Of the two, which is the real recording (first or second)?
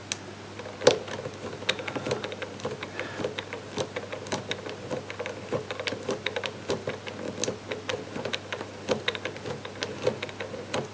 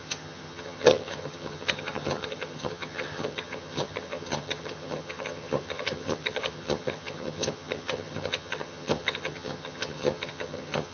first